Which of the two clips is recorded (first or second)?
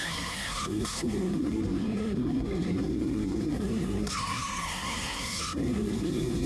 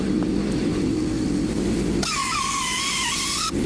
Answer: second